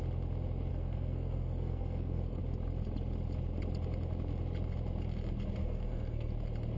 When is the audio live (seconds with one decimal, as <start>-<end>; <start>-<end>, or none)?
0.0-0.7; 2.4-5.6; 6.3-6.8